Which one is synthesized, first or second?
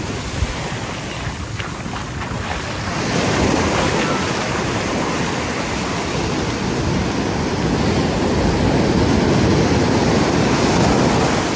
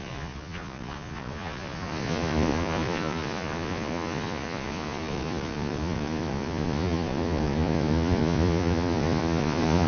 second